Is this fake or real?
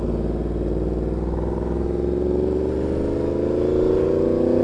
real